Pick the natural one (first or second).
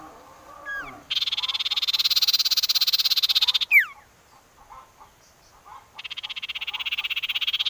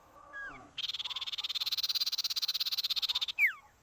first